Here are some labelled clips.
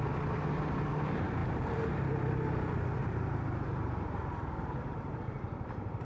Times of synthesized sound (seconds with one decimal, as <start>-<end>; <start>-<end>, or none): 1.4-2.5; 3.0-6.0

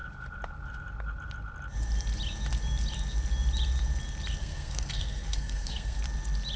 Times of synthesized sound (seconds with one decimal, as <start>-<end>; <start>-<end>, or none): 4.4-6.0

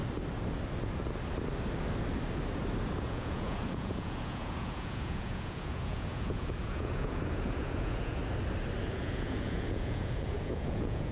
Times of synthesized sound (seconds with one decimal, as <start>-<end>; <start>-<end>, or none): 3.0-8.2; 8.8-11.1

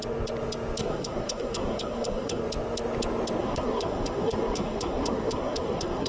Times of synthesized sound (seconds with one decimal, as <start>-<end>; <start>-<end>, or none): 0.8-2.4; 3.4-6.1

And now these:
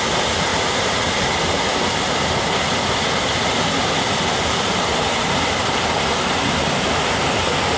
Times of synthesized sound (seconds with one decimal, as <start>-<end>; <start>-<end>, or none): 0.5-1.6; 3.8-5.6